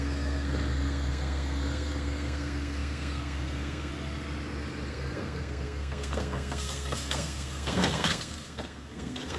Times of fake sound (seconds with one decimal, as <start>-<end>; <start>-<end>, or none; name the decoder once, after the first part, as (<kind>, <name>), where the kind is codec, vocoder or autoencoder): 0.0-3.9 (codec, SNAC); 4.9-9.4